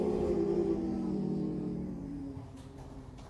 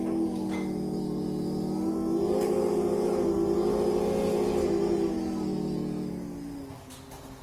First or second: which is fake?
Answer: first